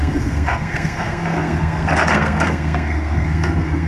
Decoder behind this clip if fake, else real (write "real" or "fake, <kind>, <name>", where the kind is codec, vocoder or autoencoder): fake, codec, SNAC